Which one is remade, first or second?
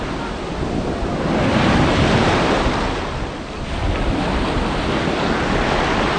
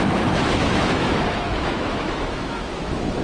second